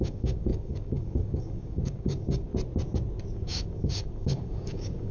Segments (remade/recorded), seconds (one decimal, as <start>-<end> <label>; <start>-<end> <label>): 0.0-2.5 remade; 2.5-3.3 recorded; 3.3-5.1 remade